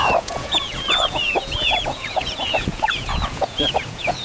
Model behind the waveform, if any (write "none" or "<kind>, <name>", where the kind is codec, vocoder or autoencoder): vocoder, Vocos